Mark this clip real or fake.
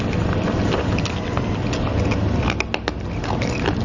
real